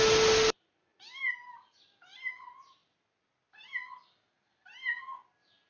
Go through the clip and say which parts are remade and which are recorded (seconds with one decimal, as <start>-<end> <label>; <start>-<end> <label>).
0.0-5.7 recorded